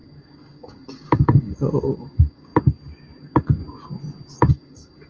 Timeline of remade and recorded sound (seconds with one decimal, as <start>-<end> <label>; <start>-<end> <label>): 0.0-2.5 remade; 2.5-3.2 recorded; 3.2-3.6 remade; 3.6-4.5 recorded; 4.5-5.1 remade